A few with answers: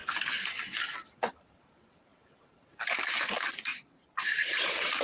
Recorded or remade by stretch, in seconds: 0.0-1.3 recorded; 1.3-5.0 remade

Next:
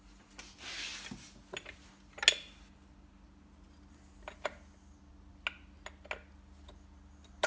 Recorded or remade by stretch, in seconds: 0.0-7.5 recorded

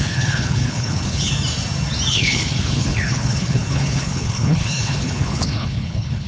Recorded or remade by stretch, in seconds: 0.0-1.3 remade; 1.3-2.1 recorded; 2.1-6.3 remade